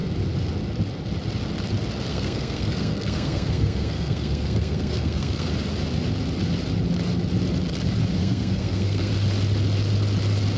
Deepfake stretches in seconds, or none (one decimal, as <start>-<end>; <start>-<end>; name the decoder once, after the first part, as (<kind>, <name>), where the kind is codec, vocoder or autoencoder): 2.1-5.5 (codec, SNAC); 8.2-9.1

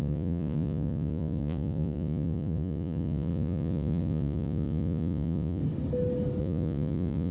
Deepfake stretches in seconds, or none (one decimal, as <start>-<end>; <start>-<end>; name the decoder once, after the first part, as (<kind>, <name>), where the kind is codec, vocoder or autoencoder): 0.0-5.6 (vocoder, Vocos); 6.4-7.3

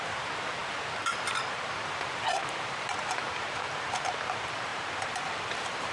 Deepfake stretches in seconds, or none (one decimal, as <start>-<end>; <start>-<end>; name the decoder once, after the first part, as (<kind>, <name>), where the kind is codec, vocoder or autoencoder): 0.0-5.9 (vocoder, BigVGAN v2)

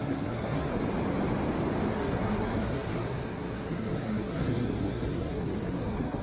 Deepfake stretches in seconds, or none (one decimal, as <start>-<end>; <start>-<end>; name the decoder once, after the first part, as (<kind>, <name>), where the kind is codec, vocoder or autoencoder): 0.0-0.8 (codec, SNAC); 1.9-6.2

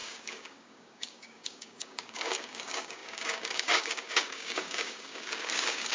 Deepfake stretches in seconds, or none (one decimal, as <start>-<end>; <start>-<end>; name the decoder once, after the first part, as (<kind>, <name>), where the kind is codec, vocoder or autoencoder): 0.0-5.9 (codec, DAC)

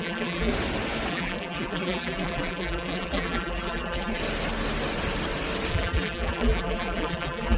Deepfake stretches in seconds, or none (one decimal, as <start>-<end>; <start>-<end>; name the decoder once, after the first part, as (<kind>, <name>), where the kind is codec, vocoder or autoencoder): 0.0-0.5 (vocoder, BigVGAN v2); 1.1-4.2; 5.7-7.6

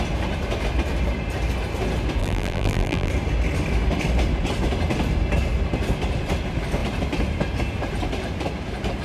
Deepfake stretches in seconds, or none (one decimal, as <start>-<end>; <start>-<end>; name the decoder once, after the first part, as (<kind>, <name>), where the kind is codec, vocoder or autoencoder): 2.2-3.1 (vocoder, BigVGAN v2)